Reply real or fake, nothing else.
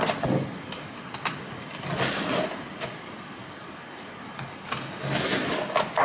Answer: real